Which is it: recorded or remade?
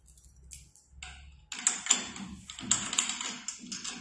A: recorded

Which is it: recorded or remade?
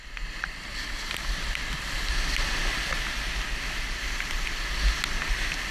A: recorded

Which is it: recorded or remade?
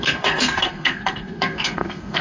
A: remade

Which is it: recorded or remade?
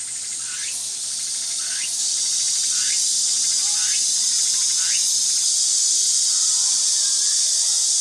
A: recorded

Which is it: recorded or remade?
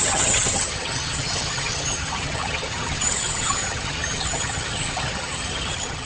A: remade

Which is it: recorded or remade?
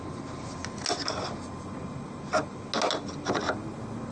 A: recorded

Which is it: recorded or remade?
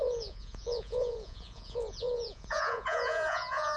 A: remade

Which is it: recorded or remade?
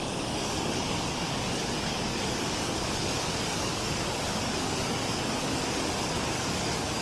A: remade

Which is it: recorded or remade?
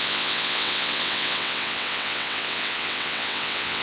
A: remade